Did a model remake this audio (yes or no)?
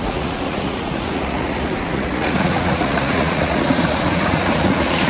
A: yes